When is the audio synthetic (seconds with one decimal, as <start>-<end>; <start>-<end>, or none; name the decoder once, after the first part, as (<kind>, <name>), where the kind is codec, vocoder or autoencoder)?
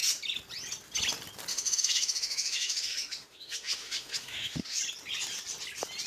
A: 1.5-4.8 (autoencoder, DAC-VAE)